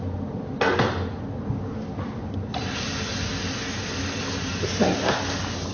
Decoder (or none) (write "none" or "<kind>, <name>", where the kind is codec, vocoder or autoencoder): none